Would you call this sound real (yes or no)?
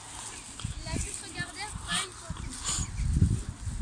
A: yes